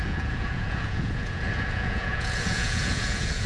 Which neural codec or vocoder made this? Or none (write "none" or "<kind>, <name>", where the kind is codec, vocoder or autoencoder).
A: vocoder, Vocos